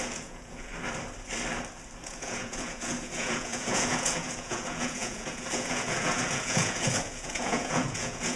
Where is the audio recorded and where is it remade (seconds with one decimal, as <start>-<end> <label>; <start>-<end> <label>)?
0.0-0.7 remade; 0.7-2.0 recorded; 2.0-8.4 remade